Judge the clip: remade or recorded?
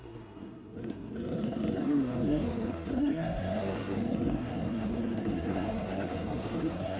remade